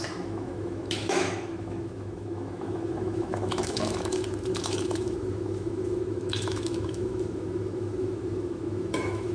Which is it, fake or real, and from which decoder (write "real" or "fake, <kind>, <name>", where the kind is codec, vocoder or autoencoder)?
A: fake, autoencoder, DAC-VAE